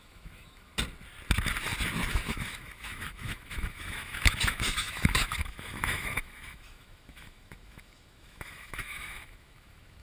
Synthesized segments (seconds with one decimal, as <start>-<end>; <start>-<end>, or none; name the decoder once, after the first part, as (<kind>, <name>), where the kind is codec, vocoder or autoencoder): 0.0-0.7 (autoencoder, DAC-VAE); 2.1-10.0